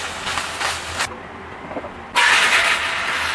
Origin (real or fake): real